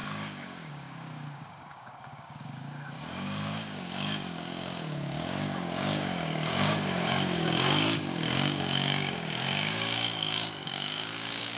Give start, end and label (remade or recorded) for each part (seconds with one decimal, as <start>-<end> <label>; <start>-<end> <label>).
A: 0.0-11.6 remade